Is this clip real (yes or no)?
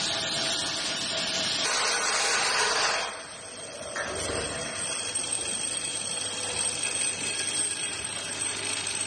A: yes